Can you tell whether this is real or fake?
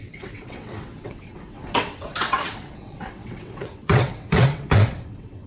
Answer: fake